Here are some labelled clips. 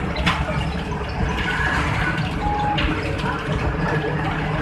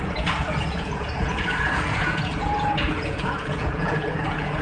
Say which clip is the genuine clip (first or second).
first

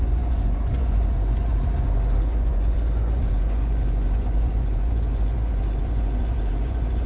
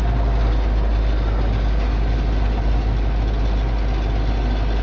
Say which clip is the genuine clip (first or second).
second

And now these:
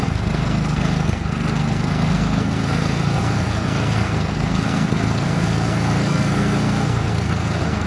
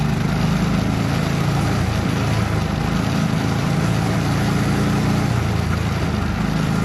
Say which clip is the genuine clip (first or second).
second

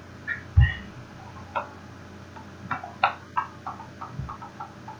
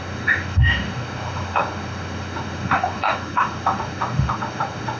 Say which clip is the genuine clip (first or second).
first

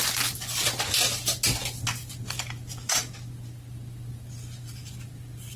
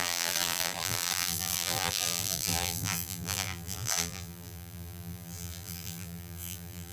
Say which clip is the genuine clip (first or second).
first